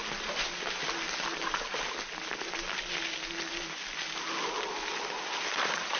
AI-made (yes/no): no